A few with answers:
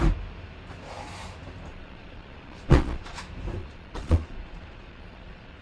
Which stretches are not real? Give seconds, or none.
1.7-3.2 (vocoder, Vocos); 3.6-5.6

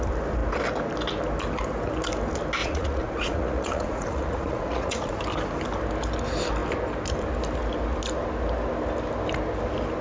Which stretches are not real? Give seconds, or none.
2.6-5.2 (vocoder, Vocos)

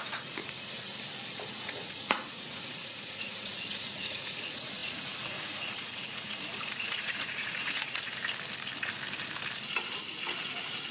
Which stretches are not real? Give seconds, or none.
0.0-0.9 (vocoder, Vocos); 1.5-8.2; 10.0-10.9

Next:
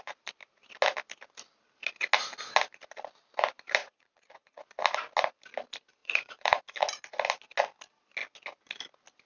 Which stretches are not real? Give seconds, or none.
3.8-4.6 (vocoder, Vocos); 6.0-6.6